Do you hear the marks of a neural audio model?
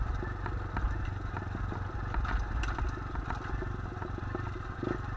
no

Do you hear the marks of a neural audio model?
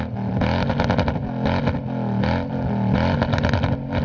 no